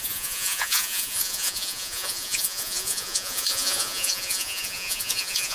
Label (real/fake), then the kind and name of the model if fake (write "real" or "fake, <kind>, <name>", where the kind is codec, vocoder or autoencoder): fake, vocoder, Vocos